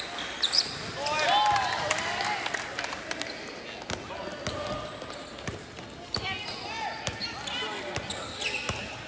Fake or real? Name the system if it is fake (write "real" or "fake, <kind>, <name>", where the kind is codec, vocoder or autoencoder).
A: real